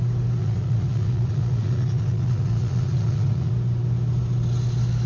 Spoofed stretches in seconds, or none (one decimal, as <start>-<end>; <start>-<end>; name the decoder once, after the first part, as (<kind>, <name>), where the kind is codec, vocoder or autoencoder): 0.4-3.5 (vocoder, Vocos)

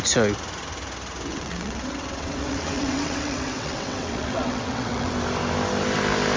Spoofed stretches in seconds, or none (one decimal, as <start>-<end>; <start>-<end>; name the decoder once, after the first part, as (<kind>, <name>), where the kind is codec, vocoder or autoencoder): 1.3-5.1 (vocoder, WaveNeXt)

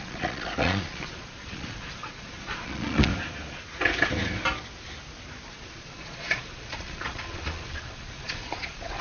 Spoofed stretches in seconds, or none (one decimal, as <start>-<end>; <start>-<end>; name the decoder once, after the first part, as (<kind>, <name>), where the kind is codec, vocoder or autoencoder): 0.0-3.1 (vocoder, Vocos); 5.5-9.0

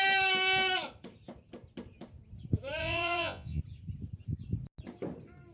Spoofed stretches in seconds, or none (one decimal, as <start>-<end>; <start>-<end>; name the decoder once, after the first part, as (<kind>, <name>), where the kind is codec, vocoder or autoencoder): 2.8-3.6 (vocoder, Vocos)

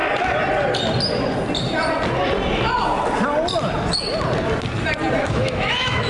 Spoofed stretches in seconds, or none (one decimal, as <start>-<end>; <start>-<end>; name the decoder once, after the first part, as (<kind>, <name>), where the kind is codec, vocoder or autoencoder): 5.2-6.1 (autoencoder, DAC-VAE)

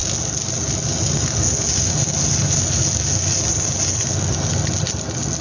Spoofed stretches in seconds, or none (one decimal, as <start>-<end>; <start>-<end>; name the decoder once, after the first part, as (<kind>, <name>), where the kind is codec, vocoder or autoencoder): none

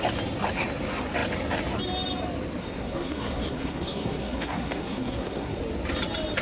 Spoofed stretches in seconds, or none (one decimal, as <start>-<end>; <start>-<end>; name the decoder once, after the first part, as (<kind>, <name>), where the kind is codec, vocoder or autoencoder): 2.6-5.6 (codec, SNAC)

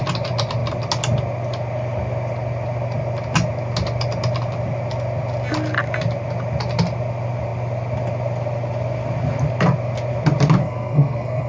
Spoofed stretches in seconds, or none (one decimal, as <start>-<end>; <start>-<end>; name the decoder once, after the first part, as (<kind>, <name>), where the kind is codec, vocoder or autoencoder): 10.6-11.5 (codec, SNAC)